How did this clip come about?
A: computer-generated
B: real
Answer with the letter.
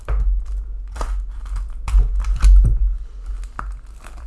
B